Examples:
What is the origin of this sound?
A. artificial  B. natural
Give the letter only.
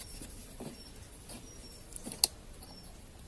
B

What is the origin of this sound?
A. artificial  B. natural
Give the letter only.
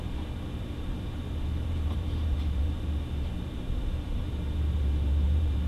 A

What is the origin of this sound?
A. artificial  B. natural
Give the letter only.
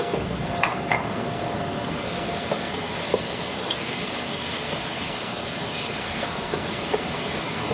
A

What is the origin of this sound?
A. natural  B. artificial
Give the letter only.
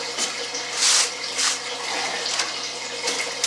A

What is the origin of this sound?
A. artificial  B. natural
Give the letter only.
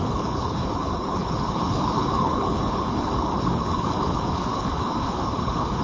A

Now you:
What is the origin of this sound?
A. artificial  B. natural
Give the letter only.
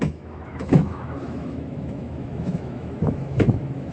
A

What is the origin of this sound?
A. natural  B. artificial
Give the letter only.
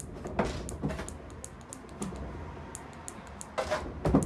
A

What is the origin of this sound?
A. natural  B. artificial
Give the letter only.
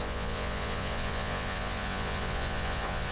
B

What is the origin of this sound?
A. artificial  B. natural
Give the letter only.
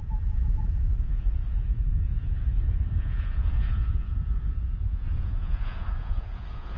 A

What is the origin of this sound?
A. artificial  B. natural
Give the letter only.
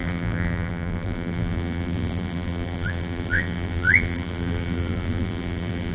A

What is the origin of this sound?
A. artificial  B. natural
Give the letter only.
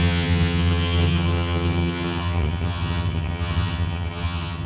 A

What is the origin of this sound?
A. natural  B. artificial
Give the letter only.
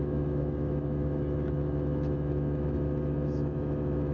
B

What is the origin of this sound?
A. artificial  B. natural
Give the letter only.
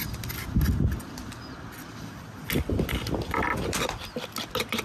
B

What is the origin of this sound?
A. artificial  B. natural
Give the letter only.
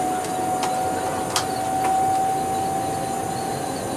B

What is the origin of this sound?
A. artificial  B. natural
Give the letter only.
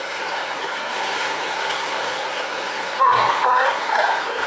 A